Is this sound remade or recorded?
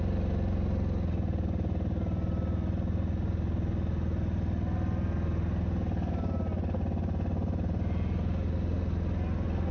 recorded